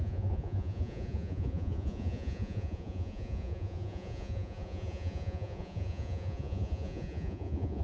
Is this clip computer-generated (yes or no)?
yes